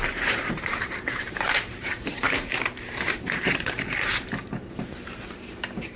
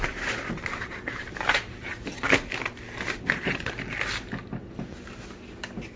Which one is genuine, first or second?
second